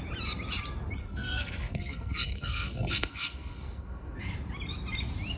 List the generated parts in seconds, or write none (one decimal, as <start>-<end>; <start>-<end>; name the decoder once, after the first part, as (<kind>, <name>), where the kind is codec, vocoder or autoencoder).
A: 1.0-4.2 (codec, SNAC)